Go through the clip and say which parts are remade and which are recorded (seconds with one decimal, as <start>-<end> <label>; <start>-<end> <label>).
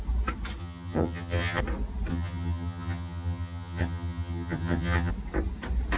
0.0-0.6 recorded; 0.6-1.6 remade; 1.6-2.1 recorded; 2.1-5.1 remade; 5.1-6.0 recorded